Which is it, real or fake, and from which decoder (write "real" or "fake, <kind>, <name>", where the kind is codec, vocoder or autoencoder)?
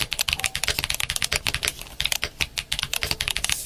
real